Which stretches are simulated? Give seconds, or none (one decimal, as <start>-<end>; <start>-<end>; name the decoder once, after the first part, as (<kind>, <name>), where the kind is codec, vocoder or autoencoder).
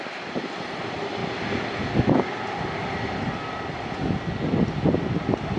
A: 0.0-1.2 (vocoder, BigVGAN v2); 2.2-5.6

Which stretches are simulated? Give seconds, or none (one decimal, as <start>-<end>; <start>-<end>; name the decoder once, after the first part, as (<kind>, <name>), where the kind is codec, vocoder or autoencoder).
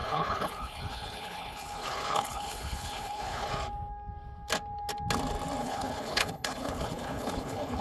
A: 0.0-3.5 (codec, HILCodec); 5.6-7.8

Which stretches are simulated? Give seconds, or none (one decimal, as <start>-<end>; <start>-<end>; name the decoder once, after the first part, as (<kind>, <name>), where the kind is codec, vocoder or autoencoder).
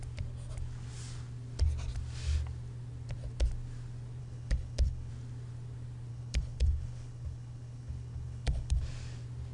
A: 4.2-5.1 (codec, HILCodec); 6.1-8.8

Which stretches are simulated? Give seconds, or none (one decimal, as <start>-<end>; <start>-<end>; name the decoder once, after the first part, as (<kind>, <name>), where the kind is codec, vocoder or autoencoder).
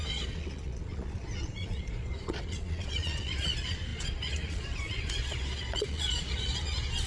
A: 0.0-7.1 (vocoder, Vocos)